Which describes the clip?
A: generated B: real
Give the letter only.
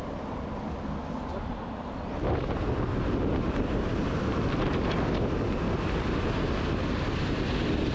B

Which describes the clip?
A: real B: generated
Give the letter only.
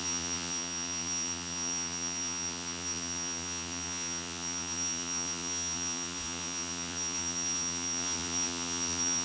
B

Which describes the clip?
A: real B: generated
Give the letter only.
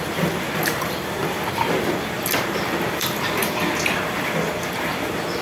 A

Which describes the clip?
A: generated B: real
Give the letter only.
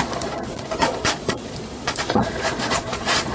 A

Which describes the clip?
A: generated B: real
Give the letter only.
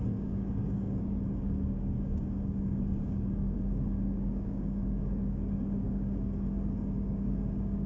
A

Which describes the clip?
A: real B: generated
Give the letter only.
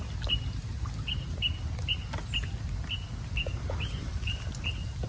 A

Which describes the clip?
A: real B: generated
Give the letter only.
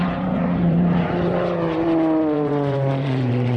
B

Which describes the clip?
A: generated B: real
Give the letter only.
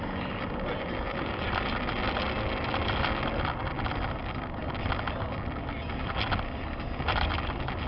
B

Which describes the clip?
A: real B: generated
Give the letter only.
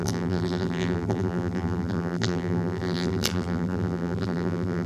B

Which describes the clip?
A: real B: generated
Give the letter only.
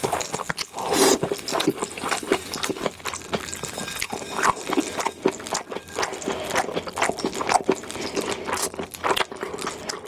A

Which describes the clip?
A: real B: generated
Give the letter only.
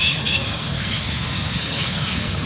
B